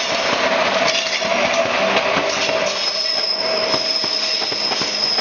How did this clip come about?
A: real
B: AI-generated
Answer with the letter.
A